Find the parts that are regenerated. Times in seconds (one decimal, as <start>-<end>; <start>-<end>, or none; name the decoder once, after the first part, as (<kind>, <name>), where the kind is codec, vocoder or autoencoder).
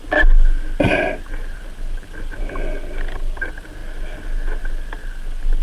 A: none